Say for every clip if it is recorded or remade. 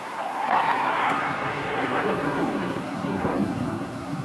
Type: remade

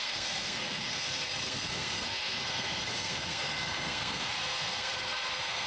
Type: remade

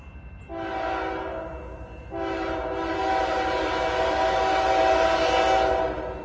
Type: recorded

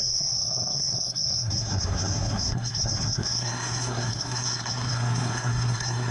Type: remade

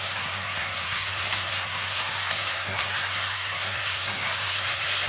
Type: remade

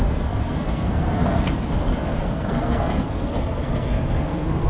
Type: remade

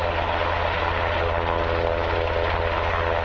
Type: recorded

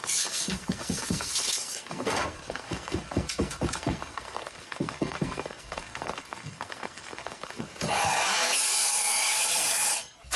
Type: remade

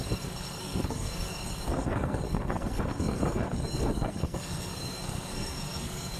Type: remade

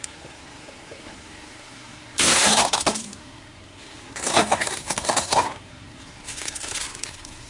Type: remade